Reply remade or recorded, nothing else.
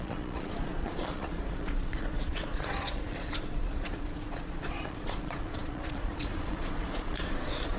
remade